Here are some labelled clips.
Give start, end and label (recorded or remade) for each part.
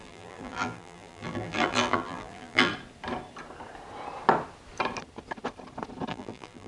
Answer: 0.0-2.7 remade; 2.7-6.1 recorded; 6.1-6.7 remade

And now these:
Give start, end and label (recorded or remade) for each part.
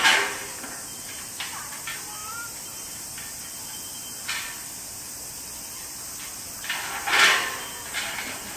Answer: 0.0-0.4 recorded; 0.4-1.8 remade; 1.8-2.2 recorded; 2.2-7.1 remade; 7.1-8.6 recorded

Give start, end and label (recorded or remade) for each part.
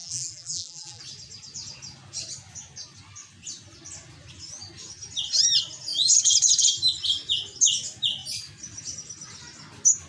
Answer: 0.0-1.0 remade; 1.0-10.1 recorded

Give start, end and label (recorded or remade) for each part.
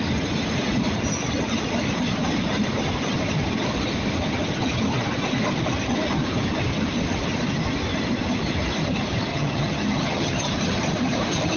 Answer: 0.0-9.3 recorded; 9.3-10.5 remade; 10.5-11.6 recorded